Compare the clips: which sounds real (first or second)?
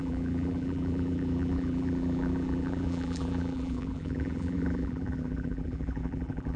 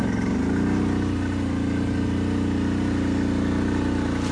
second